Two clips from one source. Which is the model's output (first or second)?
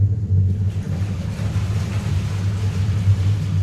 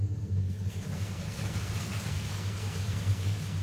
second